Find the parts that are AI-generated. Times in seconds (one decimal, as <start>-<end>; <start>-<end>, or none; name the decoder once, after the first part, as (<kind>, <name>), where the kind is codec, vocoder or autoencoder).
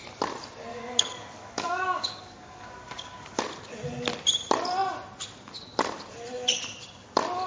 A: 0.7-3.4 (codec, DAC)